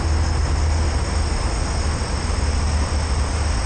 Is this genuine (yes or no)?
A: yes